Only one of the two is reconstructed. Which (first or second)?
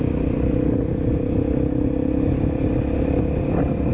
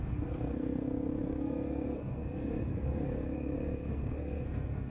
second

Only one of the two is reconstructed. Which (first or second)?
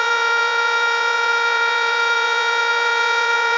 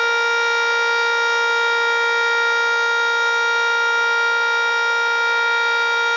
first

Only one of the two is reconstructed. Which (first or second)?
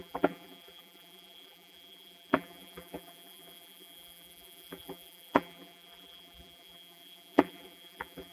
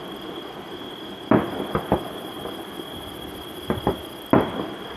first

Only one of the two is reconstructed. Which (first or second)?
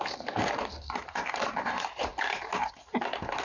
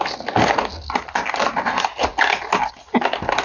first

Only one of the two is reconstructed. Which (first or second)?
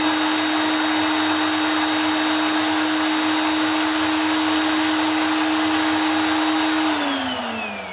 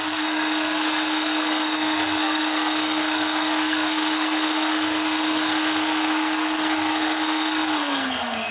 second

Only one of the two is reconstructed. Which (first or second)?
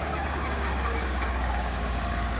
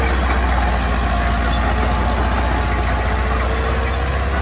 first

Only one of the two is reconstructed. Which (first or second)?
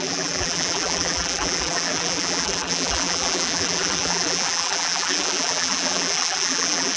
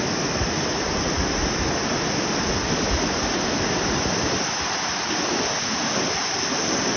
first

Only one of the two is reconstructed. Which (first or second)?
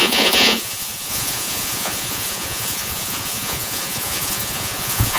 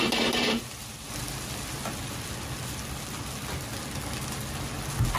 first